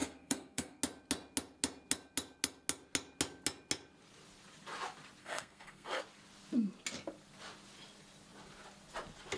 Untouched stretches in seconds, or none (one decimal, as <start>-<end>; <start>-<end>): 0.8-5.2; 6.0-9.4